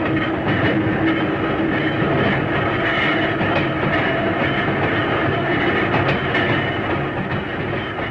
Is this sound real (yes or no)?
yes